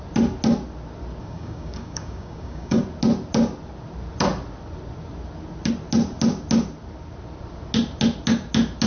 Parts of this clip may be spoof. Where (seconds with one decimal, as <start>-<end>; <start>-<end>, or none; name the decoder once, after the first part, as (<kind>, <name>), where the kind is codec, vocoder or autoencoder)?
1.2-2.8 (codec, DAC)